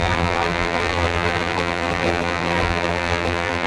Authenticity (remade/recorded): remade